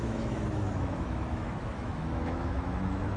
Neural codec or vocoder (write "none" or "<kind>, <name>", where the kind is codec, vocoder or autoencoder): autoencoder, DAC-VAE